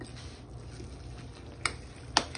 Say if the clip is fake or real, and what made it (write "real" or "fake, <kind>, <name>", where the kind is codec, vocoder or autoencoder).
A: real